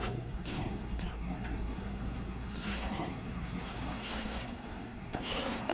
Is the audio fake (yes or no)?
yes